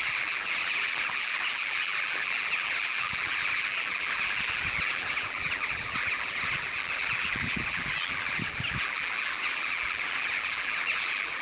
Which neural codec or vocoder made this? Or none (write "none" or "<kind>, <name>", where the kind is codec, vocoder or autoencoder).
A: vocoder, BigVGAN v2